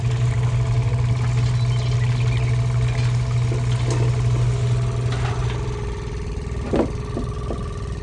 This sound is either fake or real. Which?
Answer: real